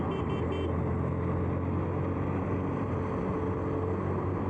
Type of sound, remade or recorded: recorded